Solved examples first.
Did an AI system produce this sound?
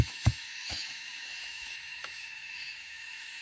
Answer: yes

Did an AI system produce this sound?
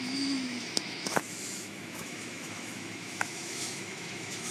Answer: yes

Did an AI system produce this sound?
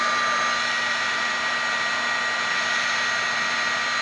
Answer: no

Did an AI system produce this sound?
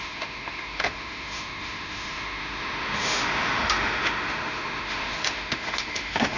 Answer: yes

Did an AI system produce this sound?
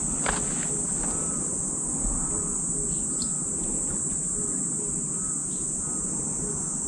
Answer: no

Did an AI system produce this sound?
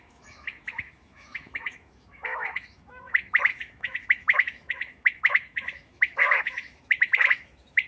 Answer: yes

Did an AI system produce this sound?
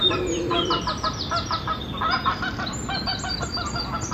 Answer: no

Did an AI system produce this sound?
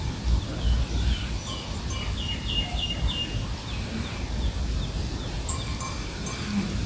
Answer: no